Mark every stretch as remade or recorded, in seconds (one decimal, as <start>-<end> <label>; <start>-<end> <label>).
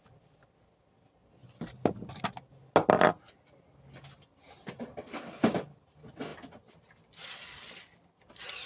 0.0-8.7 recorded